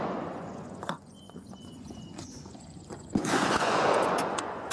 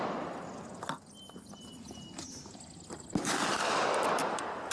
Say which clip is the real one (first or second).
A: second